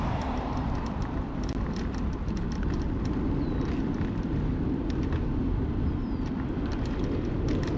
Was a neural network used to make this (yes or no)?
no